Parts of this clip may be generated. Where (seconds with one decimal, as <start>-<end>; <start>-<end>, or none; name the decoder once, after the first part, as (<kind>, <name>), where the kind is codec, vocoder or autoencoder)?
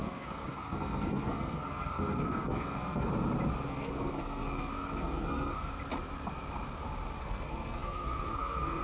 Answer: 0.0-3.1 (codec, SNAC); 3.7-5.7; 7.2-8.8